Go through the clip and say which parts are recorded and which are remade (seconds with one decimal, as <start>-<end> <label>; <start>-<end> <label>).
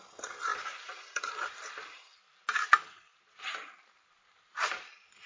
0.0-0.5 recorded; 0.5-2.0 remade; 2.0-3.1 recorded; 3.1-5.3 remade